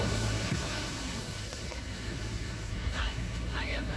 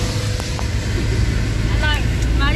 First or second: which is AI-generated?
first